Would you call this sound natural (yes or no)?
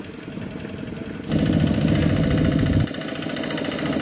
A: yes